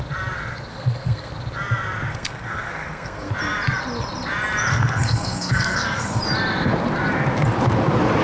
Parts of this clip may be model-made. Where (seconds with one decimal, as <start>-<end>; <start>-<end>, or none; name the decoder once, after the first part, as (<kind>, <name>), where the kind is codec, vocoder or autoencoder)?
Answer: 0.7-1.3 (codec, SNAC); 2.1-3.3; 4.7-6.2